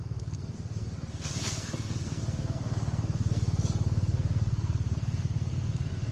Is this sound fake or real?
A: fake